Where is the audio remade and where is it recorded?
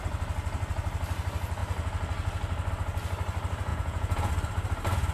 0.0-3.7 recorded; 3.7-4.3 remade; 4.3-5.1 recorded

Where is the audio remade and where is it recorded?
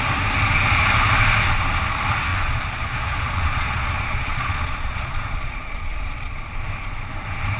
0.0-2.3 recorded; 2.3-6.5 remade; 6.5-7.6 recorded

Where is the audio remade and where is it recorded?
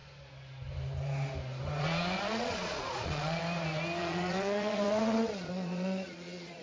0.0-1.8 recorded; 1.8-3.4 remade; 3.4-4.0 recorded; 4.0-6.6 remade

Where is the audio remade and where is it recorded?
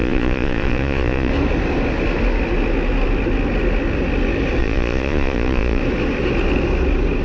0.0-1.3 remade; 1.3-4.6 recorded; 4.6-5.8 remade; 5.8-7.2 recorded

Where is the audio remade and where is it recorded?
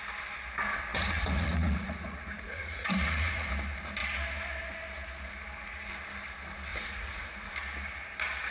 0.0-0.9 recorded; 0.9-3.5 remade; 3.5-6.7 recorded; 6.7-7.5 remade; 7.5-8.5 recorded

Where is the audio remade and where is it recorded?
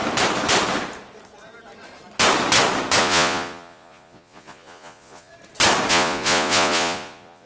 0.0-3.0 recorded; 3.0-5.3 remade; 5.3-5.9 recorded; 5.9-7.5 remade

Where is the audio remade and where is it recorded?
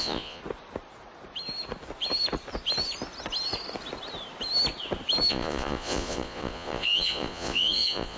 0.0-0.4 remade; 0.4-5.3 recorded; 5.3-8.2 remade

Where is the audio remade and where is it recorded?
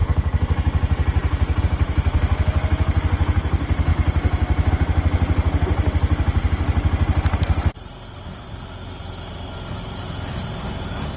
0.0-11.2 recorded